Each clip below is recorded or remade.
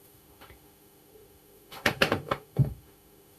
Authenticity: remade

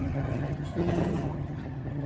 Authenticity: remade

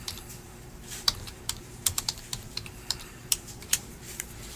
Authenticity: remade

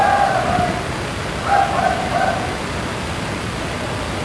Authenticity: recorded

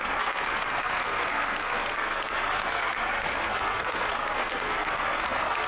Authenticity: remade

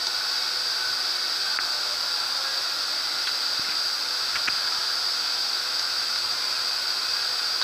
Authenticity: recorded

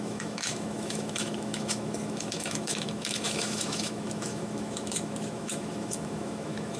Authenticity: remade